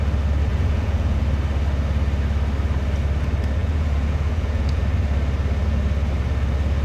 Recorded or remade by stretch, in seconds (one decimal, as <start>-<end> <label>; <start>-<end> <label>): 0.0-0.5 recorded; 0.5-1.2 remade; 1.2-3.6 recorded; 3.6-4.8 remade; 4.8-6.8 recorded